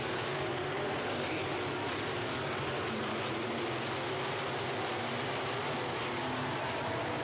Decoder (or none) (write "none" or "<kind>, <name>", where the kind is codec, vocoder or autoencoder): none